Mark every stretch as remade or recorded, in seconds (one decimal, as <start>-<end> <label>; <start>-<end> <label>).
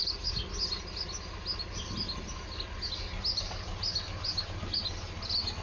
0.0-5.6 recorded